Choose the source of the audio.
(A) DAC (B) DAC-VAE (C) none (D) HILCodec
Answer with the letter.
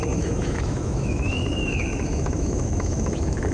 B